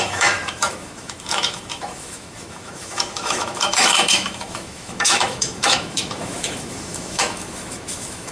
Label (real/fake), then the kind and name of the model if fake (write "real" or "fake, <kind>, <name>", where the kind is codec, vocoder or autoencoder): fake, autoencoder, DAC-VAE